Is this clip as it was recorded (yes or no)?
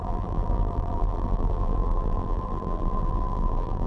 no